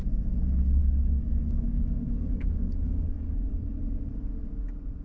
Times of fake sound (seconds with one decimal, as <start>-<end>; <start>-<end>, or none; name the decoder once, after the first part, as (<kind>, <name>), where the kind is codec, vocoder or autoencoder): 0.8-3.8 (codec, DAC)